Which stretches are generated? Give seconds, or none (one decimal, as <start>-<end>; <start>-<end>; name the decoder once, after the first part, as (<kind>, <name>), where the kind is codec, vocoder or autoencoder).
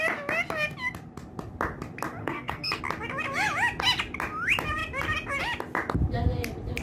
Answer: 2.2-2.8 (codec, SNAC)